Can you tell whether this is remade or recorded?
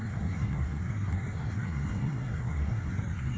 remade